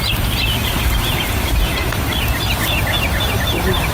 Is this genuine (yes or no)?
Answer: yes